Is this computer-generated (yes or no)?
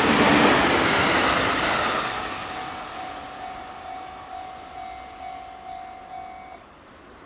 no